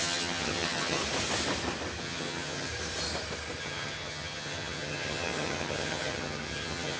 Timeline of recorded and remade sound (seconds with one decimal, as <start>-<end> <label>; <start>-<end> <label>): 0.0-1.0 remade; 1.0-2.0 recorded; 2.0-2.7 remade; 2.7-3.6 recorded; 3.6-7.0 remade